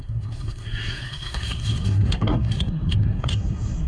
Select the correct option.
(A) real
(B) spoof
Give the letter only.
B